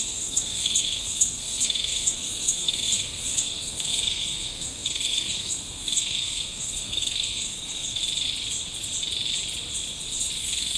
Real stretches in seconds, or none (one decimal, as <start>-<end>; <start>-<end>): 8.0-10.4